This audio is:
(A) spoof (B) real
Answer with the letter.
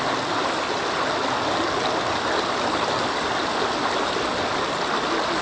B